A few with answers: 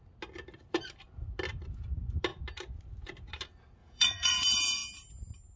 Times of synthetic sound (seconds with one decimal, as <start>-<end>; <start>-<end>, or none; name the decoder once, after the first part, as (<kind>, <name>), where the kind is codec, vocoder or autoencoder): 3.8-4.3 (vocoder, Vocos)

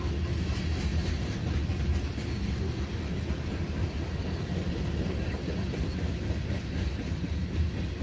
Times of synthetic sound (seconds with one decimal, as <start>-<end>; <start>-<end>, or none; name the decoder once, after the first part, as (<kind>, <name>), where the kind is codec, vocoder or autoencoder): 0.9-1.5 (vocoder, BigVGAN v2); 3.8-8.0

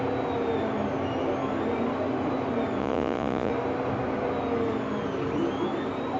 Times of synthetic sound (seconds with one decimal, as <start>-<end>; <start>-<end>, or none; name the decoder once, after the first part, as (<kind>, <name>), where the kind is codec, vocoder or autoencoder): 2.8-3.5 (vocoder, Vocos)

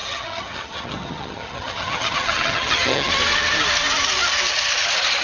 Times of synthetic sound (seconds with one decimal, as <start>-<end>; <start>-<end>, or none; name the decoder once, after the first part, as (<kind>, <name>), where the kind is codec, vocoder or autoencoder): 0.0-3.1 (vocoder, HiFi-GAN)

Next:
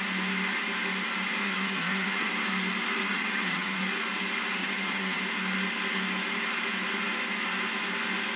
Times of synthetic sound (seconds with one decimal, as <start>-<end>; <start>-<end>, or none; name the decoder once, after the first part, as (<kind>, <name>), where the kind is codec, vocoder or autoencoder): 1.4-2.3 (vocoder, HiFi-GAN); 3.0-3.8; 4.6-5.2